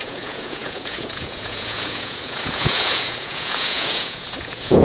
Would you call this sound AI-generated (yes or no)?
yes